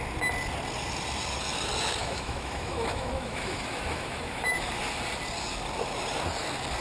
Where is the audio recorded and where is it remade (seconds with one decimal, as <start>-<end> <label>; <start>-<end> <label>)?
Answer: 0.0-2.0 recorded; 2.0-4.7 remade; 4.7-6.8 recorded